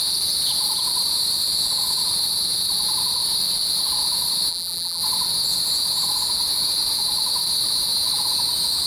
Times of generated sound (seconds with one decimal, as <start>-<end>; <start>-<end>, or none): 4.5-5.0

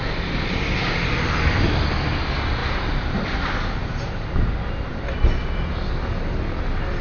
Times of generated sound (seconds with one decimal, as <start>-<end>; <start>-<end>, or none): 2.6-4.5; 4.9-5.7

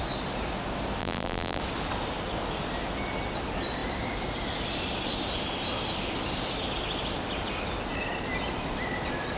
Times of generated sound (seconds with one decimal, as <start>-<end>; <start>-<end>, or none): 1.0-1.6

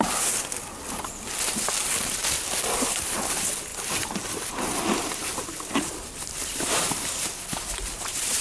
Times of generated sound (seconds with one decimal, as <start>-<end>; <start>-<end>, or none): none